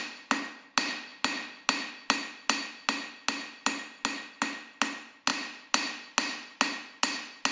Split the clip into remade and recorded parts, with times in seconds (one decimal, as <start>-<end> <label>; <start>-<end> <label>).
0.0-7.5 recorded